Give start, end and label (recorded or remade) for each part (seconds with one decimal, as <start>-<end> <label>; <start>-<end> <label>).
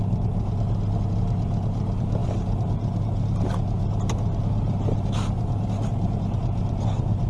0.0-7.3 recorded